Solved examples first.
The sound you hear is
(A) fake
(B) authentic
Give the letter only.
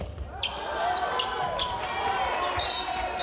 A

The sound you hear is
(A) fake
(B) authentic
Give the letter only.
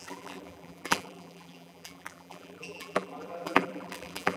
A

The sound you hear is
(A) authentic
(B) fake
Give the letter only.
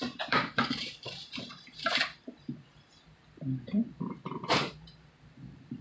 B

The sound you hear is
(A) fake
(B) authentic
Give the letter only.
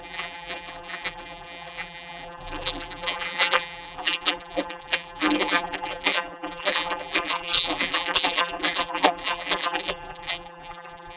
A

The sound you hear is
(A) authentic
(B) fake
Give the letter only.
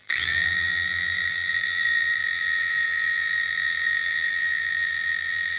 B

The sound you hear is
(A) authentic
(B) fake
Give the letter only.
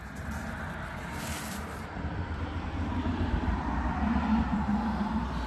B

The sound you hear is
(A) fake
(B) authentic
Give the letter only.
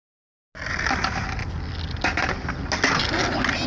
B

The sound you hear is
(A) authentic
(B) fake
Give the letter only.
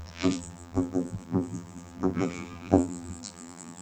B